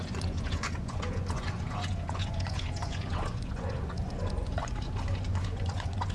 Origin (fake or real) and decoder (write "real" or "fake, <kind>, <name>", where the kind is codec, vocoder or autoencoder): fake, vocoder, Vocos